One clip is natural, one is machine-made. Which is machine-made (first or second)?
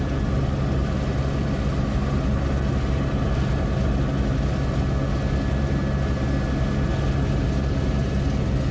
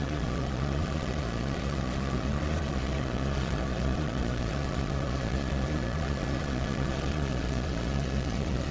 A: second